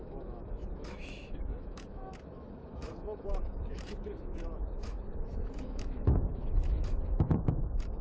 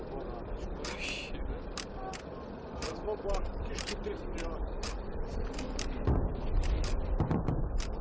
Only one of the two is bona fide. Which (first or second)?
second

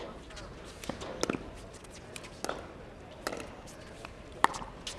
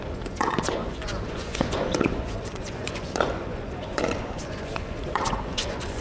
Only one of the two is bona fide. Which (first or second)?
first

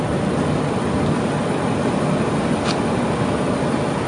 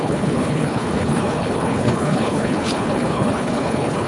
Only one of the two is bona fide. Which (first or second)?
first